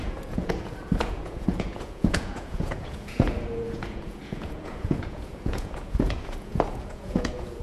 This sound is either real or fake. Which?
fake